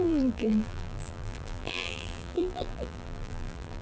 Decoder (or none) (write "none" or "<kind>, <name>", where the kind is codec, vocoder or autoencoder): vocoder, BigVGAN v2